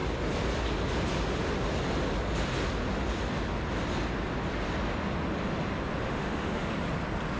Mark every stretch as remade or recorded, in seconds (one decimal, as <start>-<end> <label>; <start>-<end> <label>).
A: 0.0-6.0 recorded; 6.0-6.7 remade; 6.7-7.4 recorded

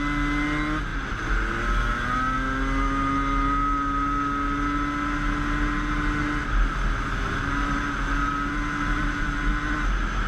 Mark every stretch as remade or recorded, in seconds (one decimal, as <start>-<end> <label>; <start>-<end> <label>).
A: 0.0-10.3 recorded

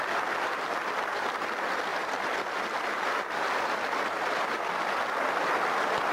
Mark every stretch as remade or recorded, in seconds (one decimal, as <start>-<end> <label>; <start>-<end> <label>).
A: 0.0-6.1 recorded

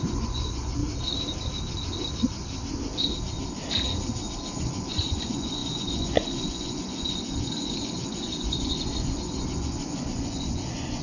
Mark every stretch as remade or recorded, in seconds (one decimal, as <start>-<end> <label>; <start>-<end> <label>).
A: 0.0-0.8 remade; 0.8-4.6 recorded; 4.6-11.0 remade

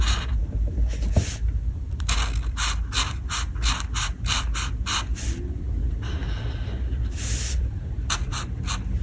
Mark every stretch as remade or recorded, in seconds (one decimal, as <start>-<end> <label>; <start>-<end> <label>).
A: 0.0-9.0 recorded

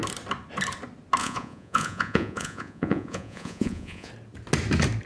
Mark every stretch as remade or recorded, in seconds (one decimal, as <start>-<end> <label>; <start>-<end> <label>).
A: 0.0-1.2 recorded; 1.2-4.1 remade; 4.1-5.1 recorded

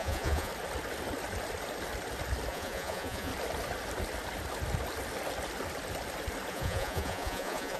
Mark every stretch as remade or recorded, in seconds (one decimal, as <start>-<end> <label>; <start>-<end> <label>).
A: 0.0-0.5 remade; 0.5-2.5 recorded; 2.5-3.3 remade; 3.3-6.5 recorded; 6.5-7.8 remade

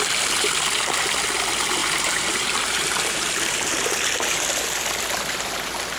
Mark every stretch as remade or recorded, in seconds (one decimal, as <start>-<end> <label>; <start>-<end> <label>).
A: 0.0-1.8 recorded; 1.8-3.7 remade; 3.7-6.0 recorded